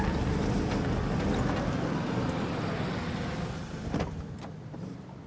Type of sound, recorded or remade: recorded